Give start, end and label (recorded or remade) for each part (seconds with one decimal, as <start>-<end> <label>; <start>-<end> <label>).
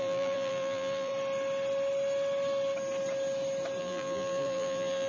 0.0-1.1 remade; 1.1-3.8 recorded; 3.8-5.1 remade